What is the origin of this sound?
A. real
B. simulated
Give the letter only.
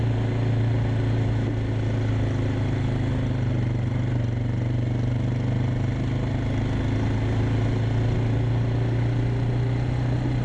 A